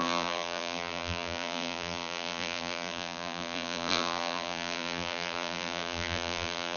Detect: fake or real fake